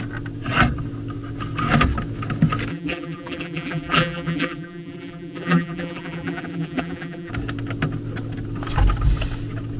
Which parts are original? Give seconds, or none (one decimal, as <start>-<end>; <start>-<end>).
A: 0.0-2.7; 7.3-9.8